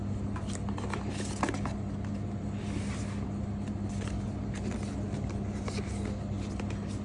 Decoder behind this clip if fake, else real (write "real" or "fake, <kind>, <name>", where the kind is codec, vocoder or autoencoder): real